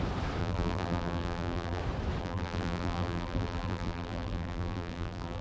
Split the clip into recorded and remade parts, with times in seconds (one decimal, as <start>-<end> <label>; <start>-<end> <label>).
0.0-0.4 recorded; 0.4-1.8 remade; 1.8-2.2 recorded; 2.2-5.4 remade